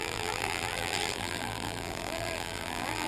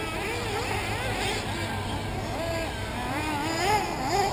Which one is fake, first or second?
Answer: first